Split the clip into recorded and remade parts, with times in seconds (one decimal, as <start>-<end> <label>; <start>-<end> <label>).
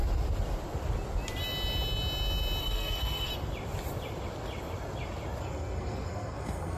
0.0-2.6 recorded; 2.6-3.3 remade; 3.3-5.4 recorded; 5.4-6.8 remade